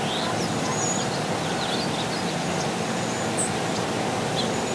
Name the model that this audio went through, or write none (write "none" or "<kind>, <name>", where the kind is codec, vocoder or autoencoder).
none